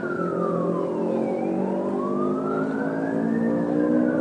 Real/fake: real